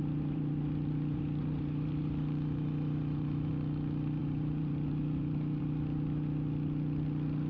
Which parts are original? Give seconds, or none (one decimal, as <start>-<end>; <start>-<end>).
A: 3.5-4.2; 5.6-7.5